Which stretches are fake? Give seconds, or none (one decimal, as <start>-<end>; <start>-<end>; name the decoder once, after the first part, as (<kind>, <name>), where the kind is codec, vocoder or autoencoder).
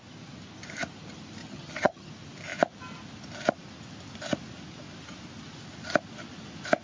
1.4-2.1 (vocoder, HiFi-GAN)